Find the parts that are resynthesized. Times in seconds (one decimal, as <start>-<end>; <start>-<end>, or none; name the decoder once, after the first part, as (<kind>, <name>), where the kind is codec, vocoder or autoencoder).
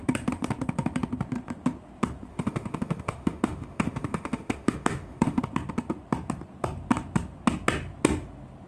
2.3-5.4 (autoencoder, DAC-VAE)